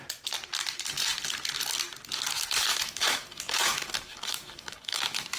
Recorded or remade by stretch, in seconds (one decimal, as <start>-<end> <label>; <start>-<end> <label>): 0.0-2.7 recorded; 2.7-5.4 remade